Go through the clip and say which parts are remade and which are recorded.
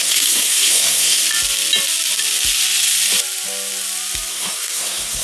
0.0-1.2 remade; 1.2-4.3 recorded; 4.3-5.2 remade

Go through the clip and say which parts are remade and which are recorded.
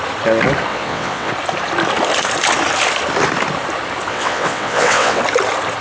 0.0-0.7 recorded; 0.7-1.3 remade; 1.3-4.1 recorded; 4.1-5.2 remade; 5.2-5.8 recorded